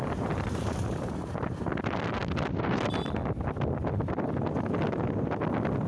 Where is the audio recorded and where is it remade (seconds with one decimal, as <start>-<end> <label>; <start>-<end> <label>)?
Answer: 0.0-5.9 recorded